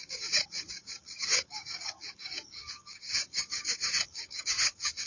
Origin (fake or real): fake